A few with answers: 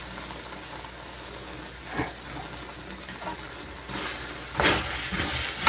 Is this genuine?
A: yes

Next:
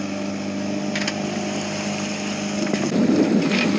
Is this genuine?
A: yes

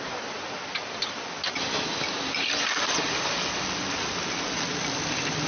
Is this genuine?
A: yes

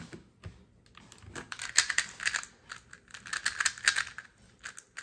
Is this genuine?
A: yes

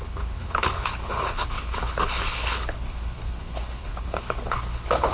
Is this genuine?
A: no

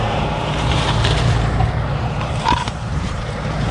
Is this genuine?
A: no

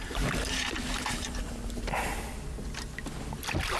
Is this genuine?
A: yes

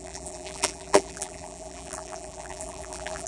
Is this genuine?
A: no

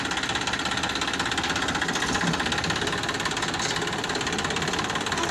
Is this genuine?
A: yes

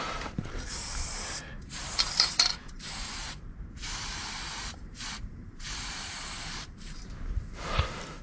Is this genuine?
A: no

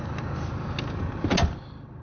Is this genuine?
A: yes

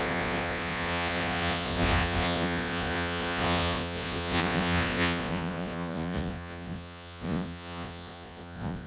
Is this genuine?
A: no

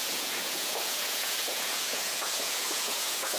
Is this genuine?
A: no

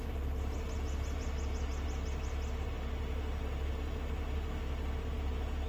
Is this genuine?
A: yes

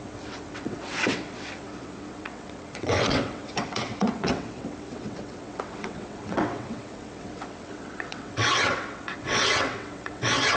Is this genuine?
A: no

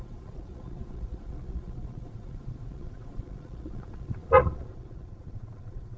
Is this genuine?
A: no